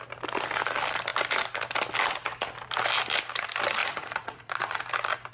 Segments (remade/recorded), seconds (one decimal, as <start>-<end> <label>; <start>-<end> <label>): 0.0-3.8 recorded; 3.8-4.8 remade; 4.8-5.3 recorded